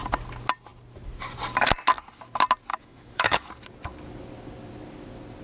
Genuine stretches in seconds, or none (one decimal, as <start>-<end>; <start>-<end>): 0.0-2.7; 3.5-5.4